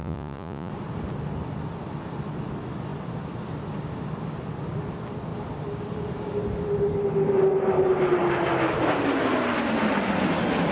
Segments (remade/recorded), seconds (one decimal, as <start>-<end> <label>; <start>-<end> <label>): 0.0-0.7 remade; 0.7-10.7 recorded